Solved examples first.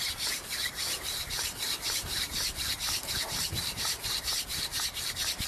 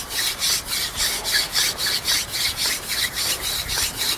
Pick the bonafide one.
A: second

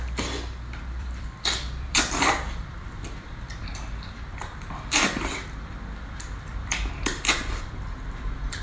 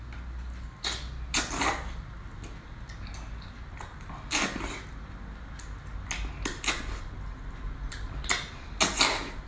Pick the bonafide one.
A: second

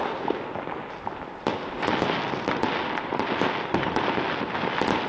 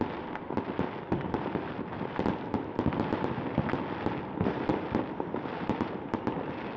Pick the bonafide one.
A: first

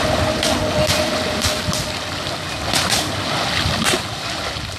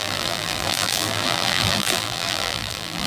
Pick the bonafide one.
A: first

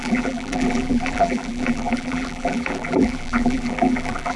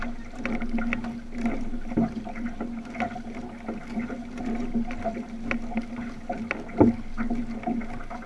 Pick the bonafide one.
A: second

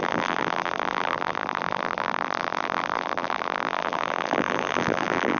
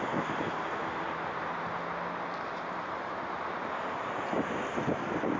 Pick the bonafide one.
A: second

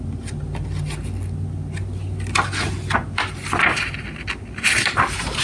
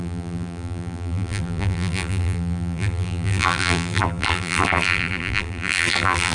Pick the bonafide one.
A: first